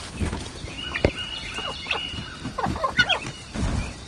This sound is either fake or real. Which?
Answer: real